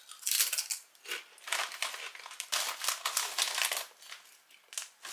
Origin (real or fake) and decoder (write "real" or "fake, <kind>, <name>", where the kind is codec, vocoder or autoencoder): real